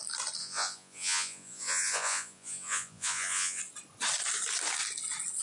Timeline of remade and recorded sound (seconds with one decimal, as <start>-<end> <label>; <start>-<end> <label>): 0.0-0.4 recorded; 0.4-3.6 remade; 3.6-5.4 recorded